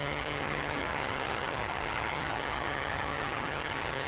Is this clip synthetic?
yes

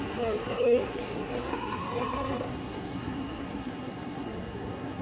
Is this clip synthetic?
yes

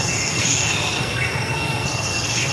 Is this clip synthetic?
yes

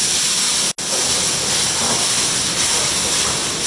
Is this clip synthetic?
no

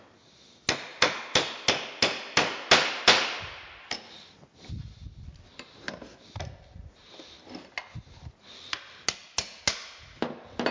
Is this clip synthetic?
no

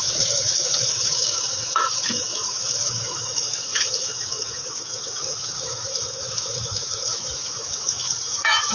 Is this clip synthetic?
yes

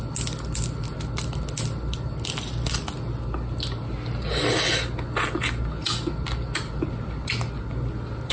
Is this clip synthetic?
no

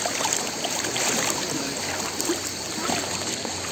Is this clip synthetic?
yes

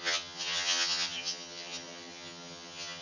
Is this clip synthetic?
yes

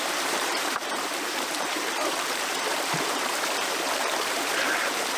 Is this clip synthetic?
yes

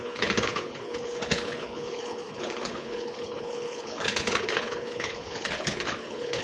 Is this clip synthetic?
yes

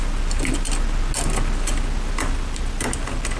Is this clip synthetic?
no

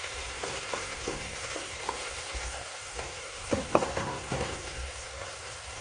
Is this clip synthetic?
yes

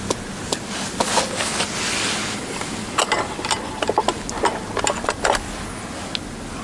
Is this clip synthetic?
no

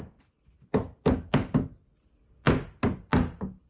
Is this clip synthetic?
no